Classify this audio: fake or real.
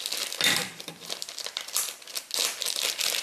real